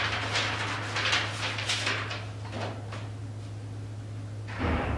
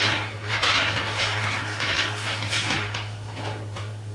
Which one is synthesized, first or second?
second